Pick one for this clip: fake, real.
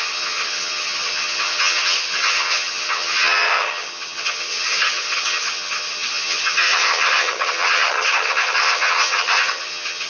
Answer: fake